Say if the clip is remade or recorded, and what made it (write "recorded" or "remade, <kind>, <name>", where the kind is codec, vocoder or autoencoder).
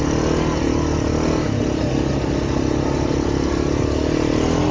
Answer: recorded